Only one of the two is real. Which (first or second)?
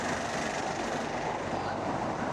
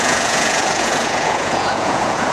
first